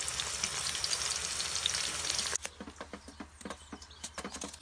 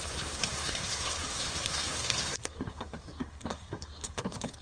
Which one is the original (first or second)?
first